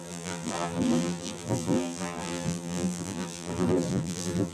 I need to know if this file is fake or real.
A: fake